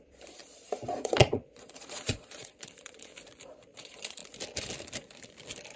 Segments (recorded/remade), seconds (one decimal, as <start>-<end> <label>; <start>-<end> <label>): 0.0-3.1 remade; 3.1-3.8 recorded; 3.8-4.2 remade; 4.2-5.8 recorded